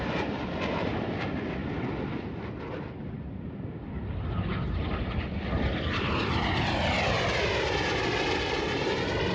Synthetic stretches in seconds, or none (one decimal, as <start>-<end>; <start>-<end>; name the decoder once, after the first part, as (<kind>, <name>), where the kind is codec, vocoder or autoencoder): none